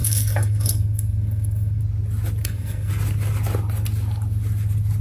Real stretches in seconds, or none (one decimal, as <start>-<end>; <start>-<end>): 1.8-2.4; 2.9-5.0